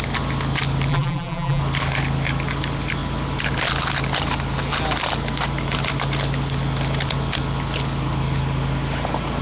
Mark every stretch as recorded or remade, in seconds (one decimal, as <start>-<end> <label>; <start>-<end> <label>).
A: 0.0-0.9 recorded; 0.9-1.6 remade; 1.6-9.4 recorded